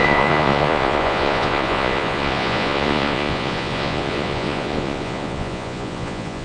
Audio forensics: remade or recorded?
remade